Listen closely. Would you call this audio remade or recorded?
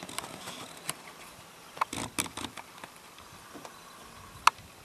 recorded